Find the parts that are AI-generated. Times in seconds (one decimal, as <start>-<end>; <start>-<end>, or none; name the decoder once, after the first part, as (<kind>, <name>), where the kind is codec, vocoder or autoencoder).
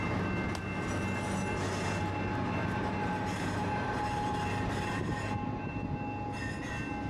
2.6-5.7 (vocoder, BigVGAN v2)